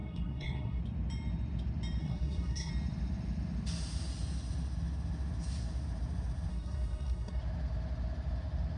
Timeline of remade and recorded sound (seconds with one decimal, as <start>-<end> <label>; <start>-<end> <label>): 0.0-0.8 remade; 0.8-2.0 recorded; 2.0-2.7 remade; 2.7-6.5 recorded; 6.5-7.4 remade; 7.4-8.8 recorded